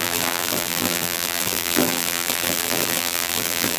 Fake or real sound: fake